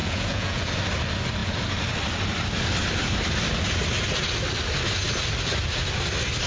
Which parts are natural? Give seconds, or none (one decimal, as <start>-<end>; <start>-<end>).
0.7-6.5

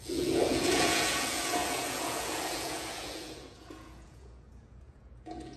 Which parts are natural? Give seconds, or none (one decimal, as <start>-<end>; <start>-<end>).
none

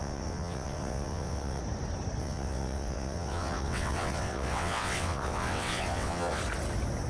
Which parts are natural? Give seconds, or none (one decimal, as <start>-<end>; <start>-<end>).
1.6-2.2; 6.4-7.1

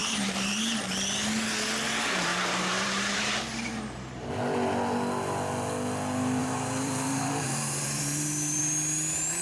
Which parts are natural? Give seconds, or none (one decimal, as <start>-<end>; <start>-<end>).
0.6-2.3; 4.3-6.4; 8.6-9.4

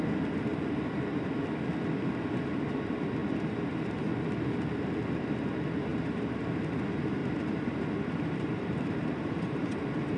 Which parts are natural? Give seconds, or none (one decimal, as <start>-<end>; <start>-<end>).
0.0-3.2; 3.9-5.9; 6.5-7.2

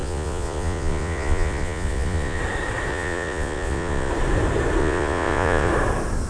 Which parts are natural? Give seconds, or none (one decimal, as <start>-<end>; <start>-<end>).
2.4-2.9; 4.1-4.8; 5.7-6.3

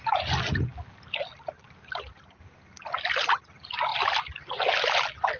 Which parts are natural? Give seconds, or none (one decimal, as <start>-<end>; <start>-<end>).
0.0-0.7; 2.5-3.9; 4.5-5.4